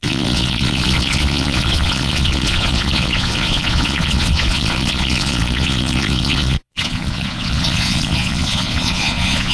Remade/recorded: remade